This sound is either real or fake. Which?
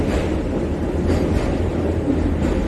real